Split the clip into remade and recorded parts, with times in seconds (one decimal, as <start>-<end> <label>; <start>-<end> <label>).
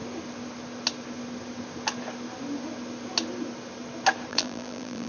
0.0-4.3 recorded; 4.3-5.1 remade